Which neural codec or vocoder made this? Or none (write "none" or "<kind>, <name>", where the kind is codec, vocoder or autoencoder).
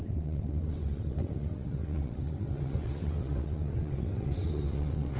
vocoder, WaveNeXt